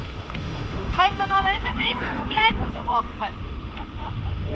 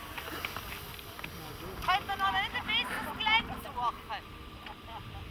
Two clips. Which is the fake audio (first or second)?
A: first